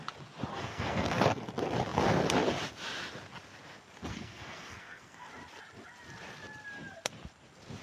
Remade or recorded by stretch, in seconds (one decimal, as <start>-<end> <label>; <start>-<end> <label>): 0.0-0.5 recorded; 0.5-1.4 remade; 1.4-4.1 recorded; 4.1-5.3 remade; 5.3-7.8 recorded